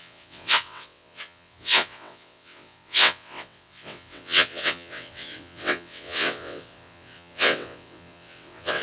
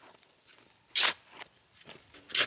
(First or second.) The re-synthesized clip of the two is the first